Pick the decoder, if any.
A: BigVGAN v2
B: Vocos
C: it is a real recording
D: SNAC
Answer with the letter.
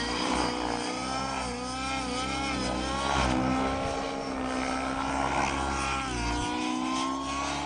C